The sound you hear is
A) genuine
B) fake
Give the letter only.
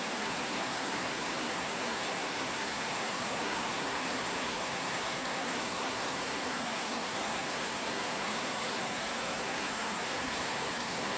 B